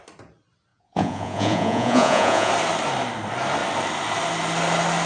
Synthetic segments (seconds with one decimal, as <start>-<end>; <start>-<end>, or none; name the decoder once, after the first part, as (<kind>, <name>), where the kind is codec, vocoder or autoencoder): 0.7-2.5 (vocoder, Vocos)